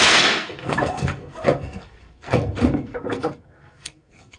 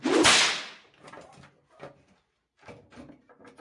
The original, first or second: second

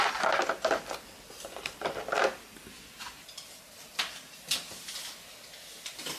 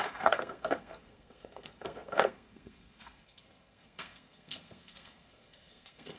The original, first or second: first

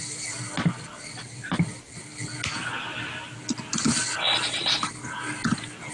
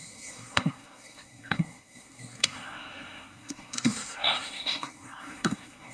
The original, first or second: first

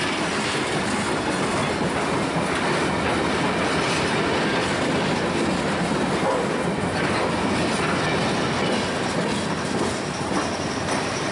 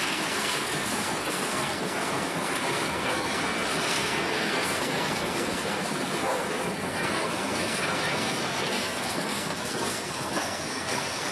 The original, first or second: first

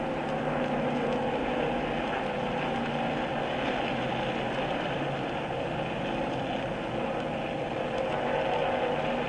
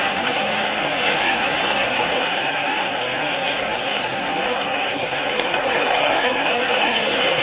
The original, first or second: first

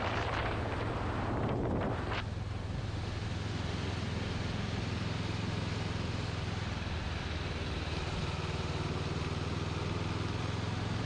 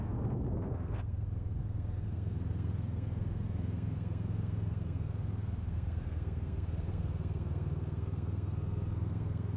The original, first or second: first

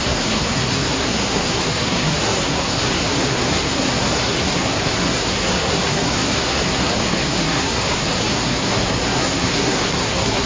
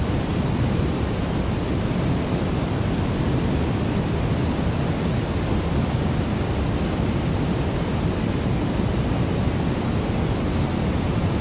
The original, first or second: second